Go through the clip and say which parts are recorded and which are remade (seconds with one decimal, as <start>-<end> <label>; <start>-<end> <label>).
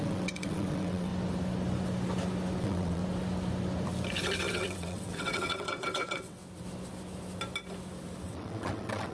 0.0-1.1 remade; 1.1-2.6 recorded; 2.6-3.0 remade; 3.0-4.5 recorded; 4.5-6.4 remade; 6.4-8.2 recorded; 8.2-9.1 remade